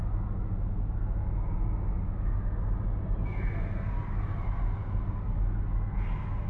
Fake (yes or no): no